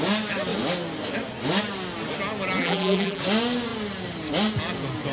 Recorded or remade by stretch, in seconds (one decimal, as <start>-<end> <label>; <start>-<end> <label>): 0.0-2.6 recorded; 2.6-3.2 remade; 3.2-5.1 recorded